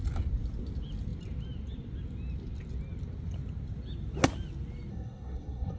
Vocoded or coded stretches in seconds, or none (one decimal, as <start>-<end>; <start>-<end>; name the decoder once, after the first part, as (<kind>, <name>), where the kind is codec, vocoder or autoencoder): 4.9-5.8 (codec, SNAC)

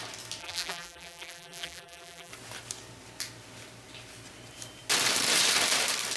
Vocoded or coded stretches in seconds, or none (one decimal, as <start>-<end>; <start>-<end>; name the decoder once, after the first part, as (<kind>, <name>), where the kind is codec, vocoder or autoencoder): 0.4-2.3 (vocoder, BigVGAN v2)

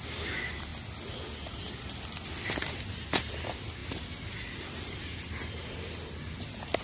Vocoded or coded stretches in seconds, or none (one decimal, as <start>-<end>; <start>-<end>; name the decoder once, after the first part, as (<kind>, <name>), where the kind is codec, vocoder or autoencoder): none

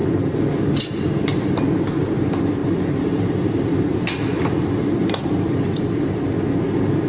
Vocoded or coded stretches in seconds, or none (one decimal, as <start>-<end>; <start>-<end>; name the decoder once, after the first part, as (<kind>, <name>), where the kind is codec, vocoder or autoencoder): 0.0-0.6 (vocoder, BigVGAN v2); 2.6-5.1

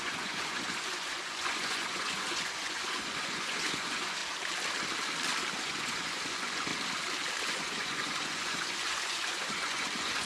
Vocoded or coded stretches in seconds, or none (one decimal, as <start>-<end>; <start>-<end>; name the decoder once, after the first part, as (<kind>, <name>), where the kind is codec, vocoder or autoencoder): 0.0-4.2 (vocoder, Vocos); 5.6-6.7; 7.4-10.3

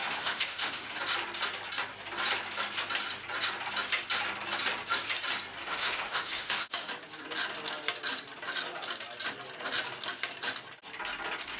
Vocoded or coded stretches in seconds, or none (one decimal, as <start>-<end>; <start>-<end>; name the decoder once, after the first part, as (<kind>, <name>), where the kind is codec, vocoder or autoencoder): 0.0-1.0 (autoencoder, DAC-VAE); 5.6-6.9

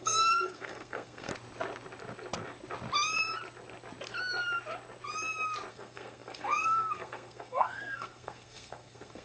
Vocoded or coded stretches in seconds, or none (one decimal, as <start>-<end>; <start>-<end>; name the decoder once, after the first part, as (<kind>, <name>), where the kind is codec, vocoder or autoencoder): 0.0-1.3 (codec, SNAC); 5.7-9.2

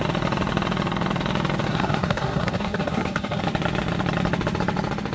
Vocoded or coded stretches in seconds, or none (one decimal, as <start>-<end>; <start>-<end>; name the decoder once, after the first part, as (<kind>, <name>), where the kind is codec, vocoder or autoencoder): 1.7-3.4 (codec, SNAC)